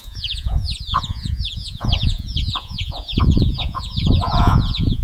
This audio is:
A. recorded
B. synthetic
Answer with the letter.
B